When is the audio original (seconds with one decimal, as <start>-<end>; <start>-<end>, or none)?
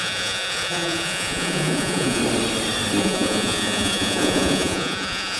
2.2-3.0